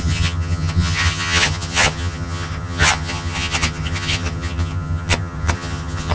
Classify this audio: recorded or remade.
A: remade